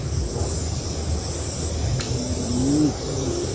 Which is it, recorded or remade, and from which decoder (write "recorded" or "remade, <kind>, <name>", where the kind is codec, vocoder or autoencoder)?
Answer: recorded